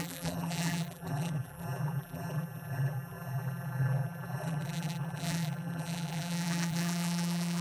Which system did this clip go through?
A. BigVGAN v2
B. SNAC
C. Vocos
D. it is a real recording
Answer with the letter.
A